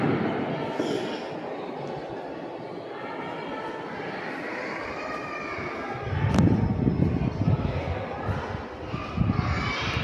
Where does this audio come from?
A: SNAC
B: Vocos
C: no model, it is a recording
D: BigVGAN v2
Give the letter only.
C